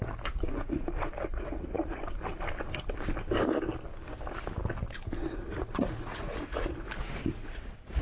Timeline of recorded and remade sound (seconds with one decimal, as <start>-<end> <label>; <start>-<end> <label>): 0.0-1.3 recorded; 1.3-2.0 remade; 2.0-5.5 recorded; 5.5-6.7 remade; 6.7-7.2 recorded; 7.2-8.0 remade